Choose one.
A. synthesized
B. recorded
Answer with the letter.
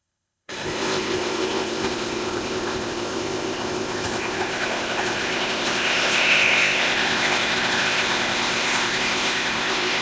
A